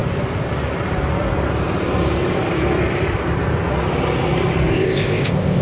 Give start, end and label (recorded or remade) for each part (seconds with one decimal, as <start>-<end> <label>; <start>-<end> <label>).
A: 0.0-4.7 recorded; 4.7-5.6 remade